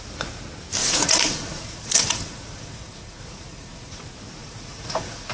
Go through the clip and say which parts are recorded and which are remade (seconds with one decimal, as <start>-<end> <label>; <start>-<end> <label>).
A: 0.0-0.8 recorded; 0.8-4.0 remade; 4.0-4.4 recorded; 4.4-5.3 remade